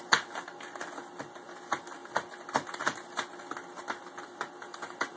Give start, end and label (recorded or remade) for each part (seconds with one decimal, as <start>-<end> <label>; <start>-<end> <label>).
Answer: 0.0-5.2 recorded